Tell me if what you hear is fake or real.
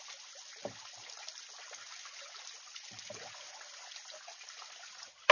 real